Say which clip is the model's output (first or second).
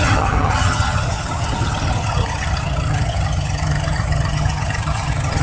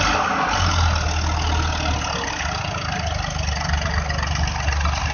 first